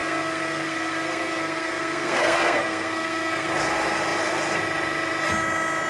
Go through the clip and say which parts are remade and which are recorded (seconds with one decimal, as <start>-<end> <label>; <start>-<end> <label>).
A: 0.0-3.5 remade; 3.5-5.9 recorded